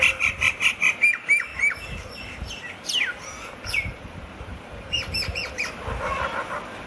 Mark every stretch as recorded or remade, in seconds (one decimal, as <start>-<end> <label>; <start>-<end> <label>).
0.0-1.5 recorded; 1.5-5.6 remade; 5.6-6.9 recorded